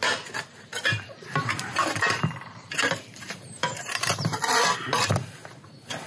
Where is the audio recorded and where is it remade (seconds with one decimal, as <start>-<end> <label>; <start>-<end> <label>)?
0.0-0.7 recorded; 0.7-4.4 remade; 4.4-6.1 recorded